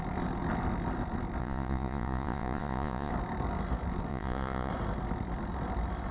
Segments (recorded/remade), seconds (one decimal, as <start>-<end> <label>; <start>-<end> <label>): 0.0-1.4 recorded; 1.4-3.1 remade; 3.1-4.1 recorded; 4.1-4.7 remade; 4.7-6.1 recorded